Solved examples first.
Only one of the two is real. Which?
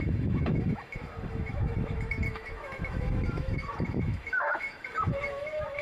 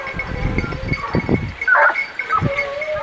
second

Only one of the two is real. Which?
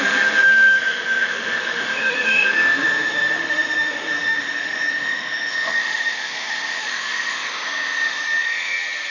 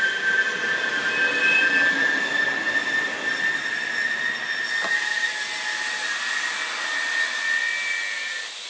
second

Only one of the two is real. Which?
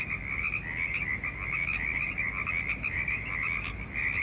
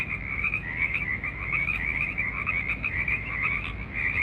first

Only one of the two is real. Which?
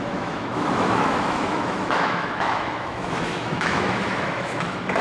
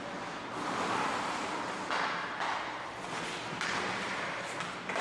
second